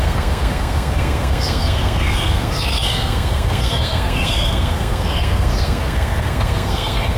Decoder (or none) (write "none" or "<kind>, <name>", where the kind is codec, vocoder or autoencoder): codec, SNAC